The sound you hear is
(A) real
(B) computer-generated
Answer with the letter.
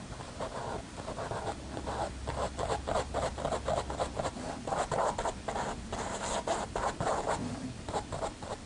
B